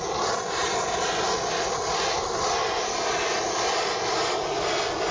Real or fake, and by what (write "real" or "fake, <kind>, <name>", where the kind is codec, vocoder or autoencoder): real